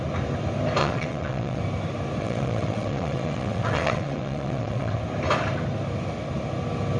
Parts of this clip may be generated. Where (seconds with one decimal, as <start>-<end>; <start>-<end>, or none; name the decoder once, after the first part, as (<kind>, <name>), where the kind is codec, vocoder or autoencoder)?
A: 0.8-1.6 (vocoder, WaveNeXt); 2.2-5.0

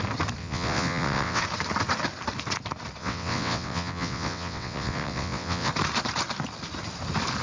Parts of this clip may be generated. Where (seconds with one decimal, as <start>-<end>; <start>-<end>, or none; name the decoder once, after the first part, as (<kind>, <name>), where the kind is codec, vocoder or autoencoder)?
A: 0.4-1.4 (vocoder, WaveNeXt); 3.0-5.7

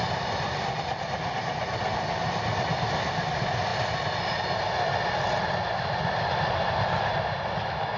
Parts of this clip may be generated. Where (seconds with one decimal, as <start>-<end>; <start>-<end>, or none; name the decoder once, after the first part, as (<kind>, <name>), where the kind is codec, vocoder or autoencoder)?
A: none